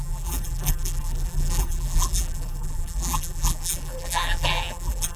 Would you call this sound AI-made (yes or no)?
yes